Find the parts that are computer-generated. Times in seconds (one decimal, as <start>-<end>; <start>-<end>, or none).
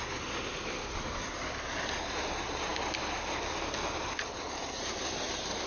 none